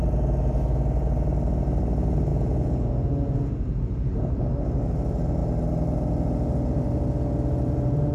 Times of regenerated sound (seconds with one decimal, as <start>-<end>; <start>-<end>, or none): 2.3-4.4